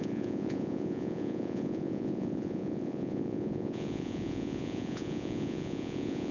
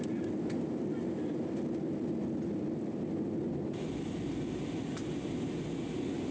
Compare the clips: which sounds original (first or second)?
second